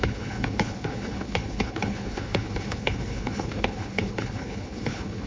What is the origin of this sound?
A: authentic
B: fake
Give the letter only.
B